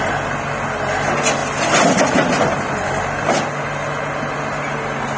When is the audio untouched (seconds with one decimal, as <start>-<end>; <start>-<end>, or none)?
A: 0.0-1.4; 2.0-5.2